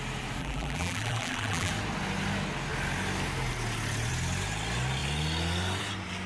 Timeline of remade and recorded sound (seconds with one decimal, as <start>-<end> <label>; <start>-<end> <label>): 0.0-0.4 recorded; 0.4-1.7 remade; 1.7-6.3 recorded